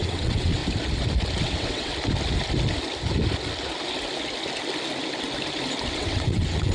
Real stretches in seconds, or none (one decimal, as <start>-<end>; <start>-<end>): 0.6-1.4; 1.9-5.9